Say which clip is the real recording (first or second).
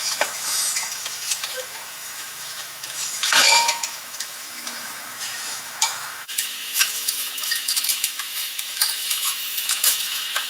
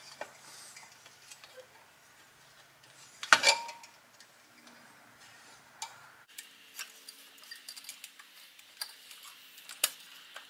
second